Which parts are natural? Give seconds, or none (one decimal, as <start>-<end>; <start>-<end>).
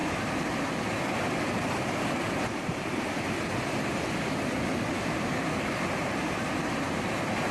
0.0-7.5